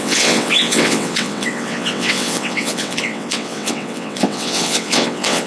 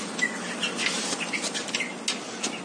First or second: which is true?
second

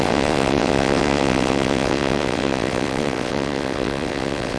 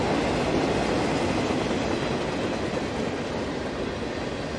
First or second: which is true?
second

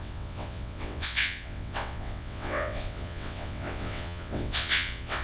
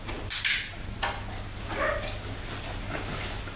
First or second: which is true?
second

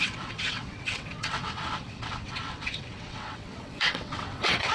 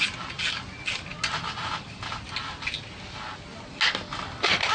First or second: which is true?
second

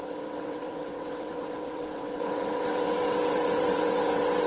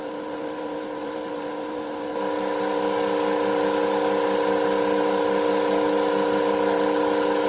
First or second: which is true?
second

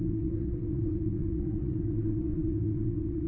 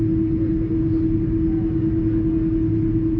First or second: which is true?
second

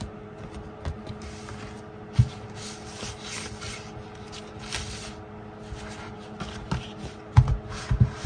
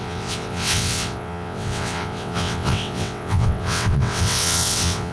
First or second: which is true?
first